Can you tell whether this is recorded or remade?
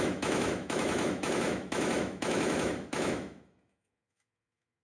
remade